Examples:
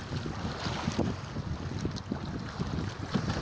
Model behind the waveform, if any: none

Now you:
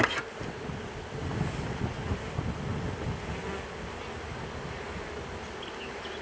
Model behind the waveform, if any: none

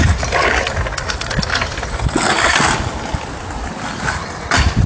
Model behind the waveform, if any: none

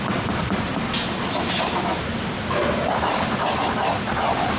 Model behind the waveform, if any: none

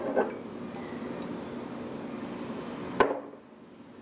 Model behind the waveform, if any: none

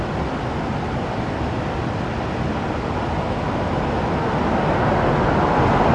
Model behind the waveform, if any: none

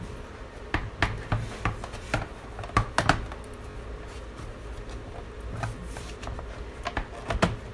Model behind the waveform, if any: none